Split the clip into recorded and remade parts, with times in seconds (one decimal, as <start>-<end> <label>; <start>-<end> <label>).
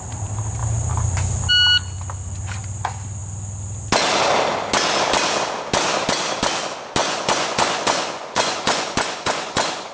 0.0-7.0 recorded; 7.0-9.9 remade